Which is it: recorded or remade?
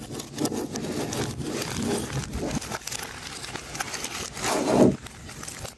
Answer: recorded